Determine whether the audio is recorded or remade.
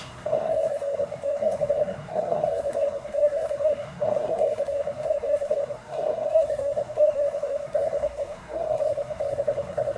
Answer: remade